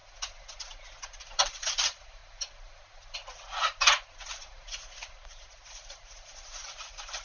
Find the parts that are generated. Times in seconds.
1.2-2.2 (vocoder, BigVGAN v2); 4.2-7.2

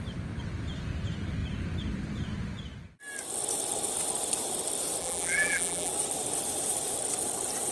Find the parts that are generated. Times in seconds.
5.0-5.9 (vocoder, BigVGAN v2)